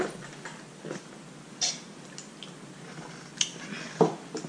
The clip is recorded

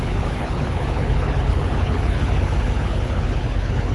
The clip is remade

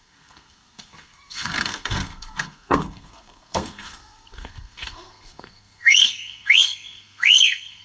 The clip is remade